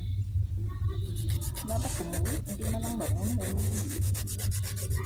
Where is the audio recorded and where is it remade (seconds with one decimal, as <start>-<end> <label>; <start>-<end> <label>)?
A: 0.0-3.5 recorded; 3.5-4.2 remade; 4.2-5.1 recorded

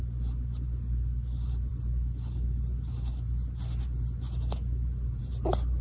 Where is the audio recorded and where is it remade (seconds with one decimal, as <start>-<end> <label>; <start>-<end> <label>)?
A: 0.0-5.8 recorded

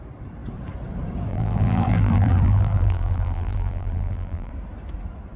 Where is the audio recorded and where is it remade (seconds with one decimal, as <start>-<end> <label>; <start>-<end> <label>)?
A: 0.0-1.3 recorded; 1.3-4.5 remade; 4.5-5.4 recorded

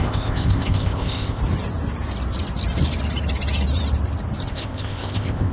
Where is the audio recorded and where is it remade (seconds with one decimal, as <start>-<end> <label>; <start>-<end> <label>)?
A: 0.0-1.4 remade; 1.4-4.5 recorded; 4.5-5.5 remade

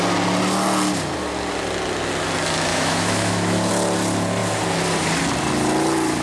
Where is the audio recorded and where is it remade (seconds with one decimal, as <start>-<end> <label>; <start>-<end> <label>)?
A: 0.0-2.7 recorded; 2.7-3.7 remade; 3.7-6.2 recorded

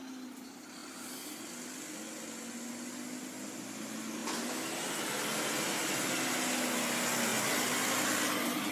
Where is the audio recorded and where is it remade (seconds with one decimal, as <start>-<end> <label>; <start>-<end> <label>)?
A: 0.0-8.7 recorded

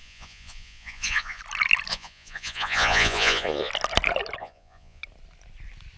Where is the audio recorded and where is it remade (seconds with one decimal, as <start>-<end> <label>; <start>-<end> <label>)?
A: 0.0-1.4 remade; 1.4-1.9 recorded; 1.9-3.7 remade; 3.7-4.4 recorded; 4.4-5.0 remade; 5.0-6.0 recorded

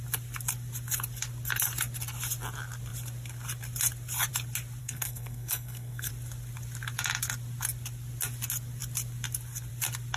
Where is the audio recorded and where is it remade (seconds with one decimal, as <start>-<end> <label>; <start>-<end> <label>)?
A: 0.0-4.8 recorded; 4.8-6.1 remade; 6.1-10.2 recorded